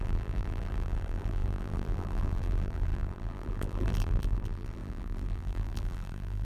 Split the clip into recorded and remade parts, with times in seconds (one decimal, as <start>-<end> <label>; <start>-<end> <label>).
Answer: 0.0-6.4 remade